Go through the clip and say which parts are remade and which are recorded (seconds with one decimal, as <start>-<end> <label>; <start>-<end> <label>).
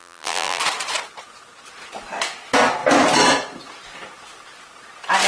0.0-0.6 remade; 0.6-5.3 recorded